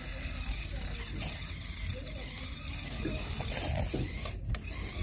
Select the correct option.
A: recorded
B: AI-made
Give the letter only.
A